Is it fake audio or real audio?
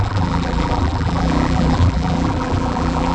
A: fake